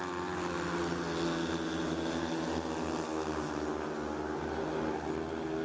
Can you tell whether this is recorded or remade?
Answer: recorded